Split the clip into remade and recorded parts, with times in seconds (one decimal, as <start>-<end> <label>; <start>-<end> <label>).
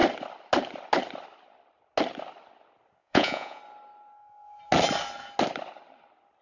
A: 0.0-3.0 recorded; 3.0-3.6 remade; 3.6-6.4 recorded